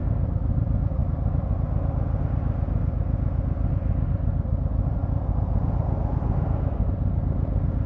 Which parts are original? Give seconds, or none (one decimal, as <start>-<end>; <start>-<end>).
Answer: 0.0-7.9